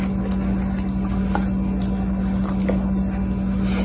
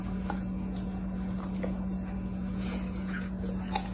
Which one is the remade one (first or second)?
second